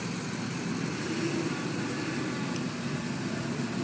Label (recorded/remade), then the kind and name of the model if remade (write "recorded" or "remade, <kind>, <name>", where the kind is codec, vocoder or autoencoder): recorded